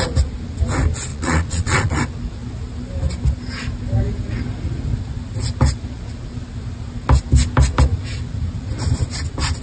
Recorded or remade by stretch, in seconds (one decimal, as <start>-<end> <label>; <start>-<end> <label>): 0.0-1.1 recorded; 1.1-2.0 remade; 2.0-9.6 recorded